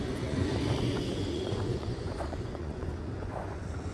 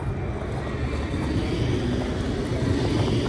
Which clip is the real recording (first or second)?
second